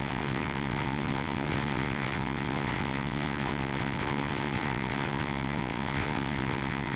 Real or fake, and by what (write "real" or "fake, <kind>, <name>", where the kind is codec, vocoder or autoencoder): fake, vocoder, WaveNeXt